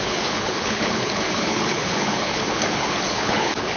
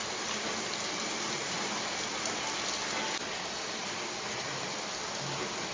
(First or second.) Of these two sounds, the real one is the second